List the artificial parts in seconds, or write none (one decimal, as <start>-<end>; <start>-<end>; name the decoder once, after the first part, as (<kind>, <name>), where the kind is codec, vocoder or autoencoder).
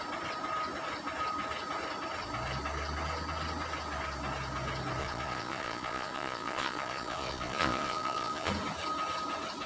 5.0-8.5 (vocoder, Vocos)